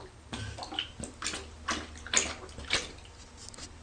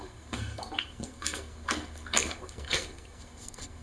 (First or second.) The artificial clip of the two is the second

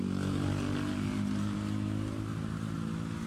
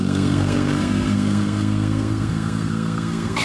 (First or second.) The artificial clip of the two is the second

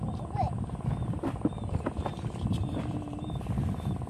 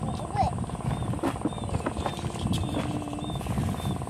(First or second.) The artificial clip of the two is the first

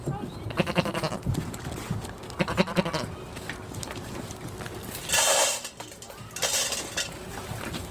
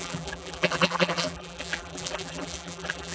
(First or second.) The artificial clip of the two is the second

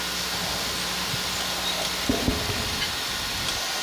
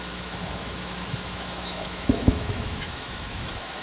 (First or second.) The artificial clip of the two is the second